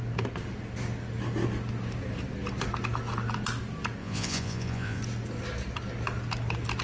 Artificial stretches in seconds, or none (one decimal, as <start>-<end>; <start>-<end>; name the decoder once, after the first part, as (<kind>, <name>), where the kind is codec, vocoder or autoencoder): 4.0-5.0 (vocoder, Vocos)